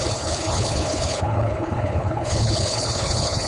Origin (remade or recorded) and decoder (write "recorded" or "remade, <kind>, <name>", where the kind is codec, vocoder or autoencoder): remade, codec, HILCodec